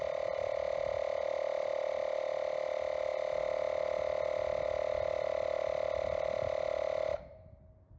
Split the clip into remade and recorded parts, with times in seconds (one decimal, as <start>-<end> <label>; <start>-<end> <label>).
0.0-8.0 recorded

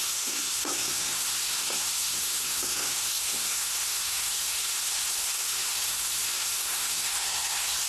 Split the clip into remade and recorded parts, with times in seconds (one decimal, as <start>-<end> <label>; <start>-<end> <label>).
0.0-7.9 remade

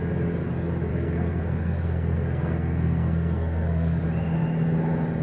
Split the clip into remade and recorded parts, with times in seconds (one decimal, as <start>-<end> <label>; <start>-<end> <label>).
0.0-0.9 recorded; 0.9-4.0 remade; 4.0-5.2 recorded

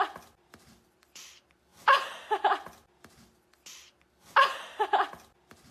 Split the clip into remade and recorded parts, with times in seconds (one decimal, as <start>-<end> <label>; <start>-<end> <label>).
0.0-1.7 remade; 1.7-5.1 recorded; 5.1-5.7 remade

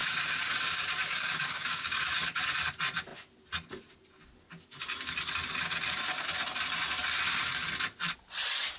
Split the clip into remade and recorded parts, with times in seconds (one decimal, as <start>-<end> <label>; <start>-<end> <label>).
0.0-2.1 remade; 2.1-8.8 recorded

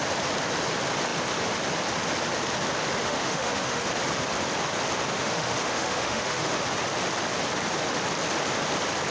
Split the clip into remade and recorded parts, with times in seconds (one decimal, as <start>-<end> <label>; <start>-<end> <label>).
0.0-3.0 recorded; 3.0-3.8 remade; 3.8-5.1 recorded; 5.1-6.6 remade; 6.6-9.1 recorded

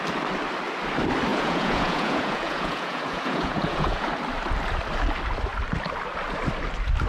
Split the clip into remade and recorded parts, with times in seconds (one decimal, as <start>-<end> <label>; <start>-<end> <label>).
0.0-1.3 recorded; 1.3-4.1 remade; 4.1-7.1 recorded

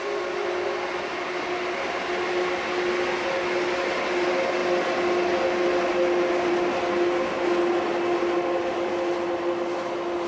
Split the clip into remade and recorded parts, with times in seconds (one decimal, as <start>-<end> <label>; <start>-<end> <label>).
0.0-10.3 recorded